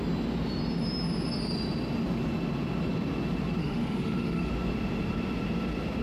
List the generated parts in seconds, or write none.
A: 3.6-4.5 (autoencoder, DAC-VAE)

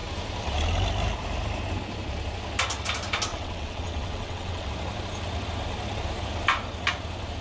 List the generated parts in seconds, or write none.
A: 3.3-4.7 (vocoder, WaveNeXt)

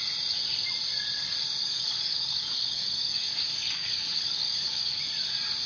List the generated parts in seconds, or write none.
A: 1.6-5.0 (codec, DAC)

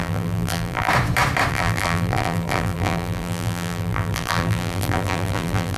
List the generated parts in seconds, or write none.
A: 0.0-0.9 (vocoder, BigVGAN v2); 1.5-5.8